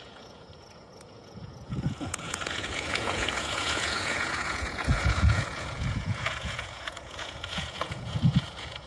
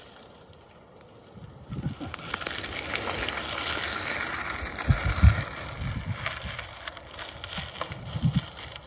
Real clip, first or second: second